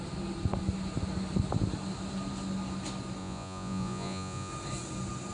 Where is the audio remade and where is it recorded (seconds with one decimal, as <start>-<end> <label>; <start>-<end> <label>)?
0.0-3.2 recorded; 3.2-4.5 remade; 4.5-5.3 recorded